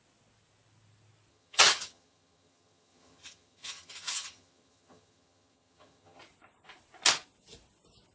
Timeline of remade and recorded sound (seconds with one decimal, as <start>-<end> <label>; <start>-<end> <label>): 0.0-1.3 recorded; 1.3-6.2 remade; 6.2-8.1 recorded